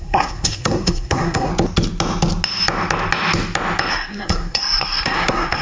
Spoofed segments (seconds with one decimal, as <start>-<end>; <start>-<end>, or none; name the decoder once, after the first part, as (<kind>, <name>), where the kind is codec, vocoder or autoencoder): 0.0-1.5 (codec, SNAC); 3.9-5.6